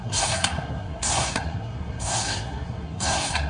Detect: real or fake fake